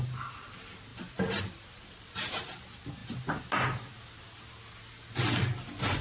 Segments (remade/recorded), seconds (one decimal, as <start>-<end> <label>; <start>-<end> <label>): 0.0-6.0 recorded